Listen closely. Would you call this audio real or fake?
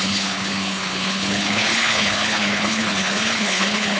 fake